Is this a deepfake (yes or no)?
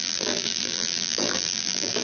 yes